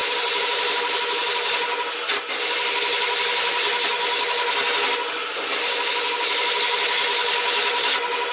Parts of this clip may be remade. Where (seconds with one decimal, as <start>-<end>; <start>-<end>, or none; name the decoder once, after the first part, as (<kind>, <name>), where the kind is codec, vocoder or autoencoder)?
0.0-0.8 (vocoder, BigVGAN v2)